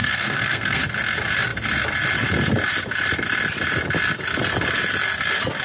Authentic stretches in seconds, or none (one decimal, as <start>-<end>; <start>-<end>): 0.8-5.6